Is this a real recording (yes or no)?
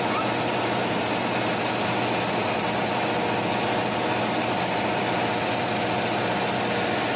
yes